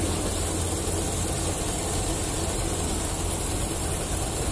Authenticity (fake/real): real